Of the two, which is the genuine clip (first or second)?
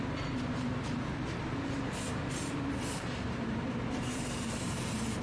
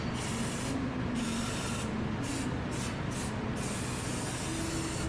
second